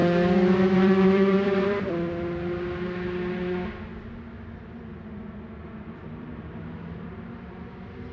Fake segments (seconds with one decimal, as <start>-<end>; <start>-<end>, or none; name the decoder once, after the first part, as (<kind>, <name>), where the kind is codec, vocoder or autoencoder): 0.0-1.9 (vocoder, BigVGAN v2); 5.6-6.3